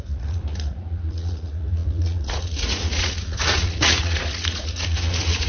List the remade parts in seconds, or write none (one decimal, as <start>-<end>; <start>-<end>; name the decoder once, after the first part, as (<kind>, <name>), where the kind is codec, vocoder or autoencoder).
0.0-5.5 (vocoder, Vocos)